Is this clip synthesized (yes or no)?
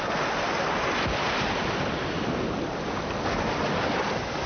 no